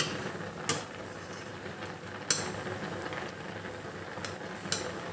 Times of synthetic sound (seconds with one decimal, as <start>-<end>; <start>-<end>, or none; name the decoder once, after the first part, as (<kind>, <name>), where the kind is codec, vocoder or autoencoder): none